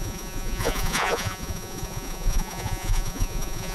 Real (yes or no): no